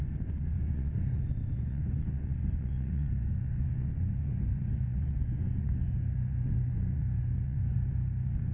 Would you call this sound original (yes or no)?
no